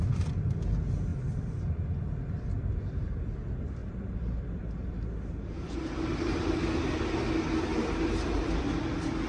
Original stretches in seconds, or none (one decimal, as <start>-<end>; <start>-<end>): 0.0-3.8; 6.0-7.7; 8.6-9.3